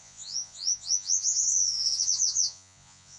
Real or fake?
fake